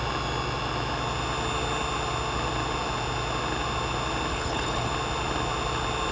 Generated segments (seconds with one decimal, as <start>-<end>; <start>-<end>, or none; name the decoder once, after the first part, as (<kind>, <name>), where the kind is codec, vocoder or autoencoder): 4.3-4.9 (codec, HILCodec)